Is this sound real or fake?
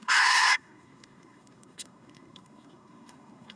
fake